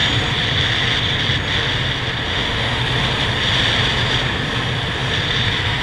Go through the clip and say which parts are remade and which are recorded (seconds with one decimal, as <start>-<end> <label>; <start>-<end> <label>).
0.0-2.3 recorded; 2.3-2.8 remade; 2.8-5.8 recorded